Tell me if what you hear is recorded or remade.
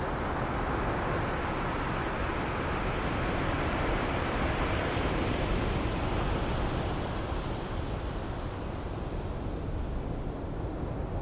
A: recorded